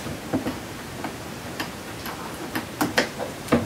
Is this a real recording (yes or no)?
no